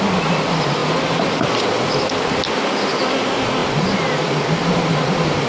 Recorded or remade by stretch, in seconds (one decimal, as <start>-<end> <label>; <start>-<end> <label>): 0.0-0.8 recorded; 0.8-1.9 remade; 1.9-3.6 recorded; 3.6-5.5 remade